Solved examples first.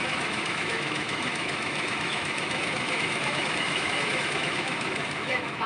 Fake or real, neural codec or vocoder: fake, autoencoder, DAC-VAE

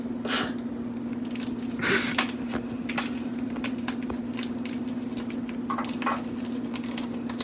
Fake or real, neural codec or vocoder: real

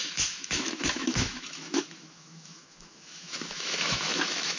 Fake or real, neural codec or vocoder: fake, autoencoder, DAC-VAE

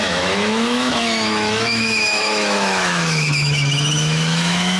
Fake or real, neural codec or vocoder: fake, autoencoder, DAC-VAE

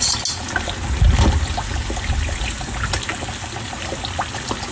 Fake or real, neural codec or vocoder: real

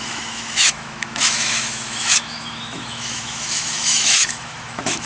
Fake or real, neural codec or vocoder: fake, autoencoder, DAC-VAE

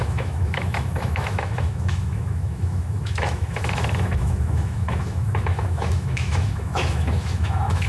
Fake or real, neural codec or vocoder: fake, autoencoder, DAC-VAE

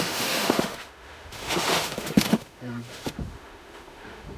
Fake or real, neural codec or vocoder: fake, autoencoder, DAC-VAE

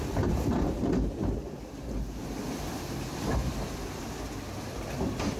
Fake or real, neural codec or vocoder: real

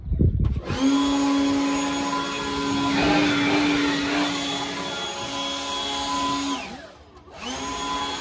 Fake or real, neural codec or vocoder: real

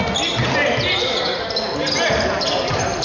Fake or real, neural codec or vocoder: real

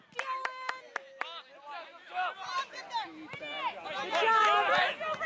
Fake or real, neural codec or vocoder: real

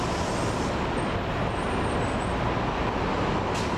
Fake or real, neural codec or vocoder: real